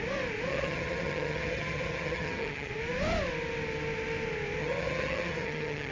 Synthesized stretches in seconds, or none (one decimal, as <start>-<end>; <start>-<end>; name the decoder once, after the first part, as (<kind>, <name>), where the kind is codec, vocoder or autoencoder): 0.5-2.7 (vocoder, HiFi-GAN); 4.6-5.9